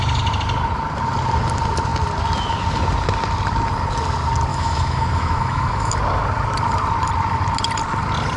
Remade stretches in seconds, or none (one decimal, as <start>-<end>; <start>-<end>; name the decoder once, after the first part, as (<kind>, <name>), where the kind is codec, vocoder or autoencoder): 4.5-5.9 (autoencoder, DAC-VAE)